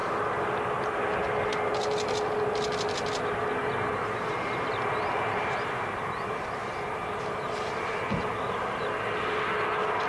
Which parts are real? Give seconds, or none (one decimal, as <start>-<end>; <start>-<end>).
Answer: 0.0-3.6; 8.0-10.1